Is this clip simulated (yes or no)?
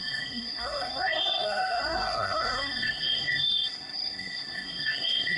yes